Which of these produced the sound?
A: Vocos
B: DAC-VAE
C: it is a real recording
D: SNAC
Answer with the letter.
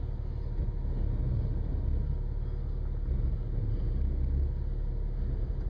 C